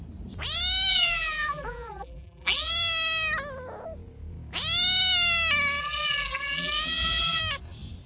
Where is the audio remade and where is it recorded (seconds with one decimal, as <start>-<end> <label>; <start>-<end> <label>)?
0.0-0.9 recorded; 0.9-2.7 remade; 2.7-5.8 recorded; 5.8-7.4 remade; 7.4-8.1 recorded